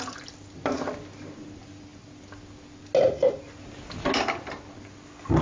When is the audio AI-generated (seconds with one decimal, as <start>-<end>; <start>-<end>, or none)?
none